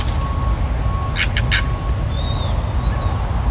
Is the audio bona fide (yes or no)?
yes